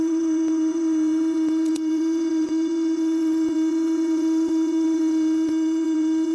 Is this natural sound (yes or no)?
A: no